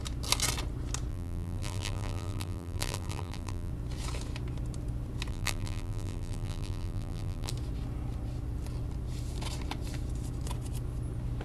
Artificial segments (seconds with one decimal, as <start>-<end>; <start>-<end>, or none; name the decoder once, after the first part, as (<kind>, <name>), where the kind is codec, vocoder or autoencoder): 1.1-3.7 (vocoder, BigVGAN v2); 5.3-7.5